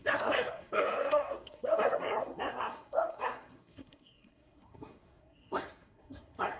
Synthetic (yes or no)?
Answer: yes